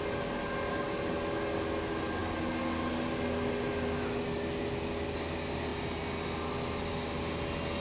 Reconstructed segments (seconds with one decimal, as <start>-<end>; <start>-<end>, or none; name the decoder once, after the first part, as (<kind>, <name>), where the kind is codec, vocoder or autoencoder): none